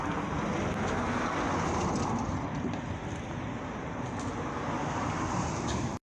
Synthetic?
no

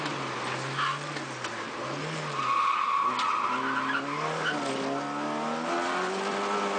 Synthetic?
no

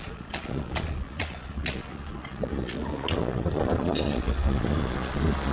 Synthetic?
yes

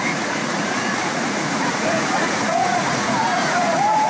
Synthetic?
yes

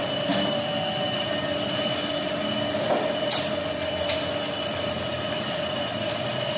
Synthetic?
no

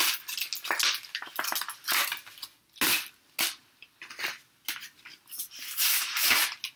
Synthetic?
no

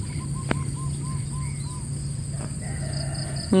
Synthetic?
no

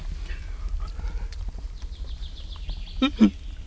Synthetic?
no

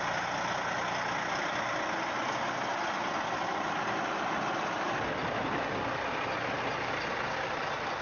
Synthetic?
no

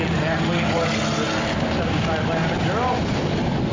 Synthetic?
no